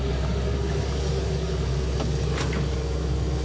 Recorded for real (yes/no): no